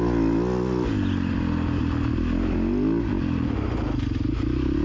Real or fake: real